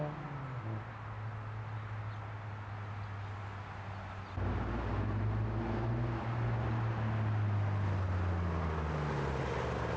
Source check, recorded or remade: recorded